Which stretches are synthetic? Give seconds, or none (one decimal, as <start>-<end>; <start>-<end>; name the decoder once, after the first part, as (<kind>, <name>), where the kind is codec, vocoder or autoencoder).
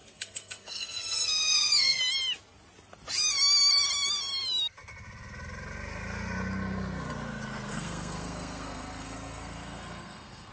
0.0-2.0 (codec, SNAC); 7.7-10.5